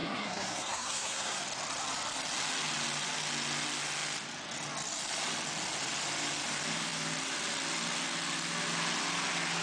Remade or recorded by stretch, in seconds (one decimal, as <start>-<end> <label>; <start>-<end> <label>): 0.0-1.4 remade; 1.4-9.6 recorded

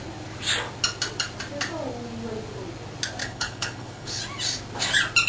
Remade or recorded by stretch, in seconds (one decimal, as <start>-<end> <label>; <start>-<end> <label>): 0.0-3.2 recorded; 3.2-4.2 remade; 4.2-5.3 recorded